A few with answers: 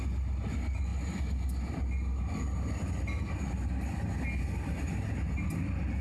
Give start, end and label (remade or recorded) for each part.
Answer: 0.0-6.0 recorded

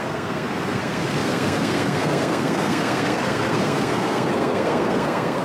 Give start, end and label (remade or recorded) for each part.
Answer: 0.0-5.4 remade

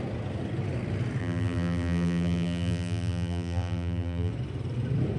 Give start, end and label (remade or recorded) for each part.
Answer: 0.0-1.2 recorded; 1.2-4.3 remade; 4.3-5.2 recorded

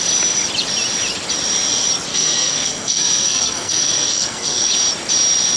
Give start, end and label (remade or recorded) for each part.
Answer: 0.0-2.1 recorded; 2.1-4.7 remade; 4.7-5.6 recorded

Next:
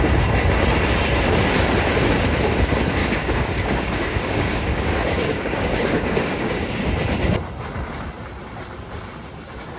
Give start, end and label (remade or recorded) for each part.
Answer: 0.0-3.0 recorded; 3.0-6.7 remade; 6.7-9.8 recorded